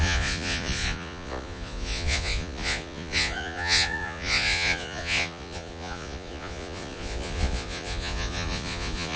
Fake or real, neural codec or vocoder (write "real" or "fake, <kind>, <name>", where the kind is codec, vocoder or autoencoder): fake, vocoder, Vocos